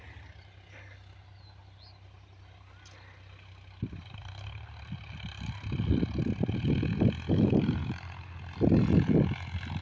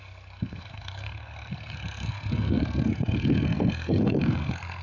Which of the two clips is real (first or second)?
first